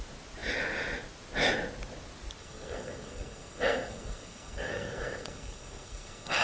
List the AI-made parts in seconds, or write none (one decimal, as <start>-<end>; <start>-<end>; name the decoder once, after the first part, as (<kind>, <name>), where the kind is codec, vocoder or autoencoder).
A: 2.4-6.4 (codec, SNAC)